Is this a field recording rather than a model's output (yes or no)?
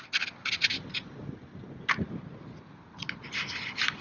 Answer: yes